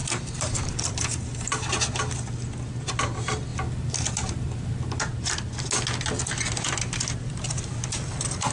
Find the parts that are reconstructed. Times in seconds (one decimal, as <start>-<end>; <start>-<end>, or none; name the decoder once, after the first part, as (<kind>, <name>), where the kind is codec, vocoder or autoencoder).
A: 0.0-1.7 (vocoder, BigVGAN v2); 3.5-5.0